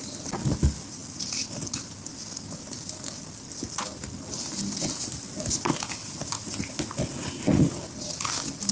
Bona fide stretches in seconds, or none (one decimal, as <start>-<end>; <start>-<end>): 0.0-8.7

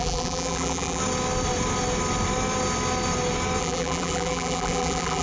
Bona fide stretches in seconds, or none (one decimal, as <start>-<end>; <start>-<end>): 1.0-3.6

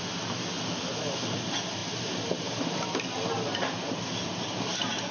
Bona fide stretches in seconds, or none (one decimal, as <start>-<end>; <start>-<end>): 0.0-1.8; 4.6-5.1